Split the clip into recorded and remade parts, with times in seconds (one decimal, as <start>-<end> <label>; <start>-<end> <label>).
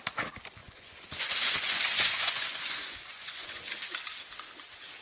0.0-0.6 recorded; 0.6-3.6 remade; 3.6-5.0 recorded